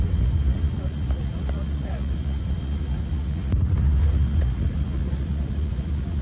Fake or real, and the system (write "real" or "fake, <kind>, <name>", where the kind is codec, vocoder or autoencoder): fake, vocoder, Vocos